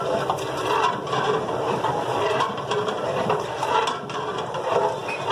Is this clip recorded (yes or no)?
no